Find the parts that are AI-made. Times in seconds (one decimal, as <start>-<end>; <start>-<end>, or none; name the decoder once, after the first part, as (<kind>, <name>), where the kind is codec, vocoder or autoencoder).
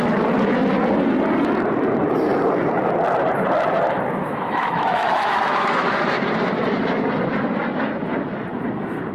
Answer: 4.2-5.9 (autoencoder, DAC-VAE)